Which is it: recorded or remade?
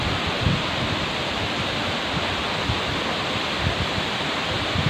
remade